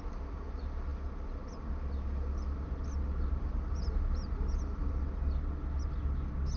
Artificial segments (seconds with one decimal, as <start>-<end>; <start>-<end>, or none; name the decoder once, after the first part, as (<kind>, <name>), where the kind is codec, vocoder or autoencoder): none